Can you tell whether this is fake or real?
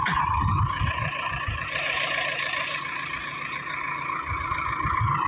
fake